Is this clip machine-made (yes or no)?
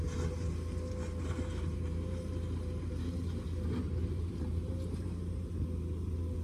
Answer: no